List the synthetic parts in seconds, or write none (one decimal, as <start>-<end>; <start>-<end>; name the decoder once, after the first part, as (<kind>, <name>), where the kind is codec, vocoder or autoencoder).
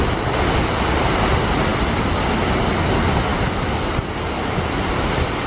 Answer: none